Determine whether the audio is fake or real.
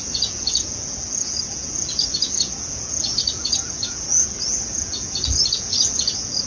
fake